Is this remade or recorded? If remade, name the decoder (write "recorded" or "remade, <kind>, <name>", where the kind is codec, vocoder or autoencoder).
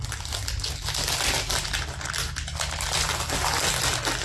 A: recorded